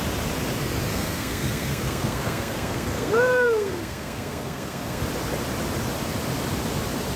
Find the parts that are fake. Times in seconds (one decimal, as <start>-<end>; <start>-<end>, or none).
0.9-5.0